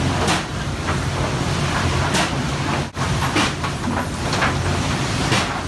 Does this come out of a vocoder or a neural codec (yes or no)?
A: no